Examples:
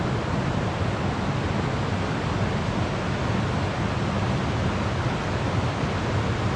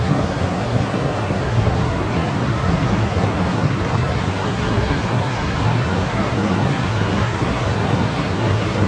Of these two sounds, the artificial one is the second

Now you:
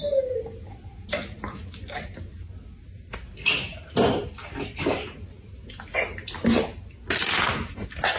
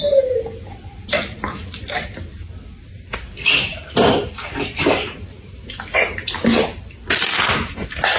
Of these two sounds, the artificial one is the second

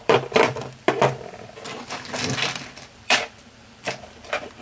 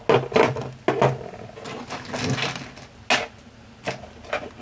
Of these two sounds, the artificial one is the first